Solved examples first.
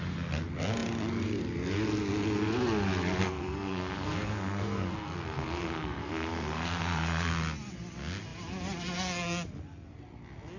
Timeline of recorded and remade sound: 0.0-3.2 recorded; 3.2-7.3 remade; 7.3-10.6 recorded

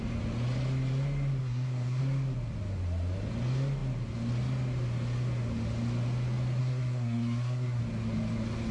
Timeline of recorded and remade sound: 0.0-1.4 recorded; 1.4-2.0 remade; 2.0-6.6 recorded; 6.6-7.8 remade; 7.8-8.7 recorded

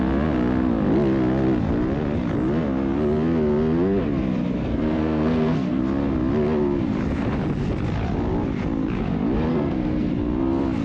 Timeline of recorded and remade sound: 0.0-4.6 recorded; 4.6-5.8 remade; 5.8-9.5 recorded; 9.5-10.1 remade; 10.1-10.8 recorded

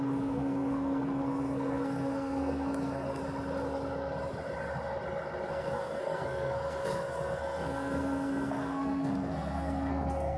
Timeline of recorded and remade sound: 0.0-3.2 remade; 3.2-5.5 recorded; 5.5-10.4 remade

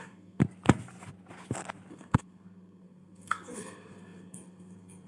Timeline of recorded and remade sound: 0.0-0.4 remade; 0.4-1.9 recorded; 1.9-5.1 remade

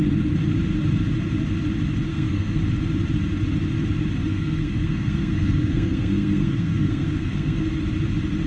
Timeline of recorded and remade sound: 0.0-2.1 recorded; 2.1-2.6 remade; 2.6-4.3 recorded; 4.3-7.8 remade; 7.8-8.5 recorded